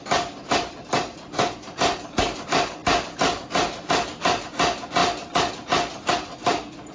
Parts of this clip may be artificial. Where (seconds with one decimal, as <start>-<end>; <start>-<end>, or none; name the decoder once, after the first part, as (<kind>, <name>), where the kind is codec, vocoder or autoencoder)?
none